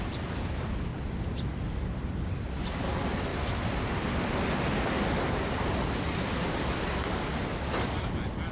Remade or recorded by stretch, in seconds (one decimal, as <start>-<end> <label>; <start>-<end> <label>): 0.0-8.5 recorded